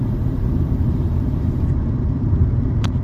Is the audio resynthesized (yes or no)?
yes